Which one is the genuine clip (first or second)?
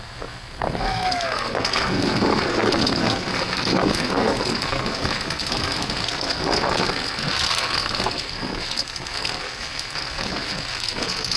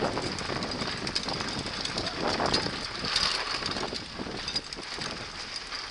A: second